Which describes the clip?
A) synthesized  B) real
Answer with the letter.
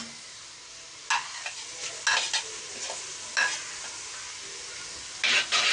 B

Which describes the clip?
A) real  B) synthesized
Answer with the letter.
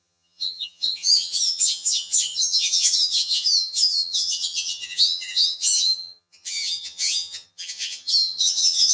B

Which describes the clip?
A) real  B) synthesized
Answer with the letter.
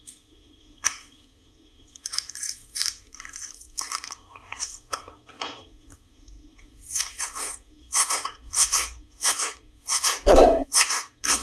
B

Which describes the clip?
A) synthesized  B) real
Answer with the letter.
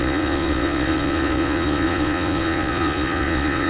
A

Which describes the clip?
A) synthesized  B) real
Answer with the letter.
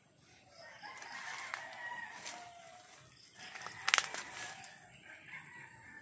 B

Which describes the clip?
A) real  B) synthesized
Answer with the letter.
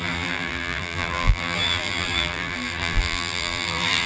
B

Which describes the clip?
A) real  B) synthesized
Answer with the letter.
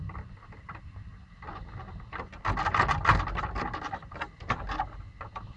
A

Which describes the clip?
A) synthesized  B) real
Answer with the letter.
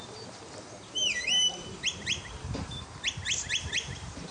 A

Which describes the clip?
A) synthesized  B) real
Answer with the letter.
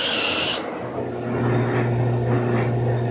B